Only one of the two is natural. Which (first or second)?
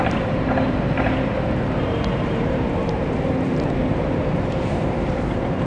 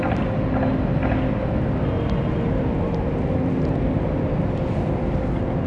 second